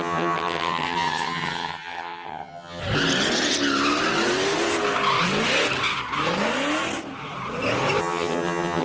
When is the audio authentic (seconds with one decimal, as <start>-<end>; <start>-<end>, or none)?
2.8-8.0

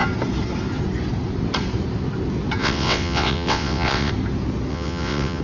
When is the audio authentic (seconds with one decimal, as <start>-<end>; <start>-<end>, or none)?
0.0-2.6; 4.1-4.7

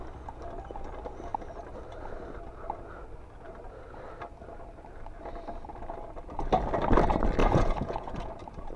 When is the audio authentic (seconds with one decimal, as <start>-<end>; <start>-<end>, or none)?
0.0-7.4; 8.3-8.8

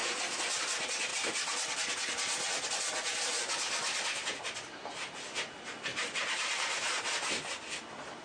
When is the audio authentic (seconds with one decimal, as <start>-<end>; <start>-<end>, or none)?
0.0-5.9; 6.9-8.2

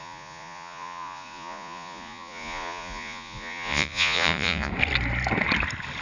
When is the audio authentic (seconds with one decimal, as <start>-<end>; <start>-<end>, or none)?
4.7-6.0

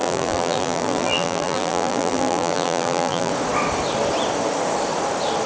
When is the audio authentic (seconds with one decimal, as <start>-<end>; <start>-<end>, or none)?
3.3-5.5

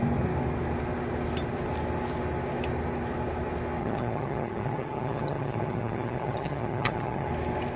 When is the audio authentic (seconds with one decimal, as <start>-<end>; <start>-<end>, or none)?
0.0-3.8; 7.3-7.8

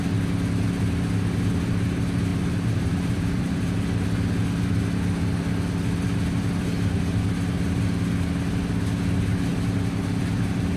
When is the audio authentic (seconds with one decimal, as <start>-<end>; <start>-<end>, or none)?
0.0-2.3; 3.7-10.8